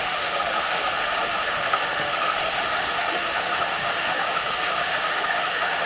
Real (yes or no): no